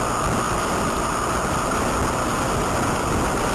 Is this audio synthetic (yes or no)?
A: no